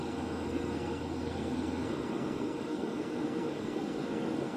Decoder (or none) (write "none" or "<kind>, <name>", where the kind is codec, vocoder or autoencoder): codec, SNAC